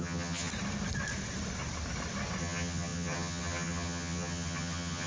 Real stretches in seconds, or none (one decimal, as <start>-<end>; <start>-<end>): 0.5-2.4

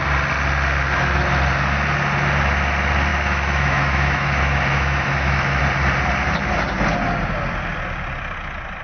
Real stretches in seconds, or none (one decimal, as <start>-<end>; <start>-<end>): 0.0-3.1; 5.6-8.8

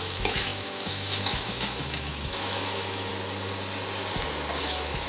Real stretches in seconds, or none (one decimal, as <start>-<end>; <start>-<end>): 3.1-4.6

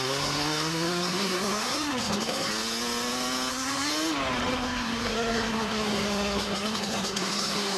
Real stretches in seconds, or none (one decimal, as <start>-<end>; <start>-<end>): 2.5-3.5; 3.9-4.5

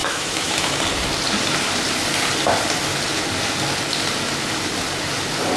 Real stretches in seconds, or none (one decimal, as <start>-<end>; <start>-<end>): 0.8-5.6